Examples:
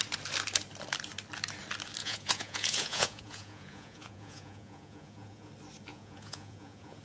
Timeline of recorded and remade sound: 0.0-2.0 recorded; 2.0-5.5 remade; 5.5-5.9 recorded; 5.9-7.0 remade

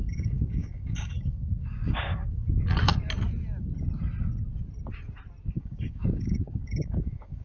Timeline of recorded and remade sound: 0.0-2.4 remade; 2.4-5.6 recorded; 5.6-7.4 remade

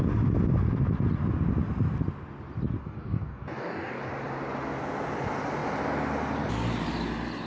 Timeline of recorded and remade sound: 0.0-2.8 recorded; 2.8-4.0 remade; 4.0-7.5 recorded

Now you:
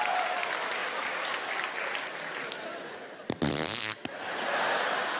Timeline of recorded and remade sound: 0.0-5.2 recorded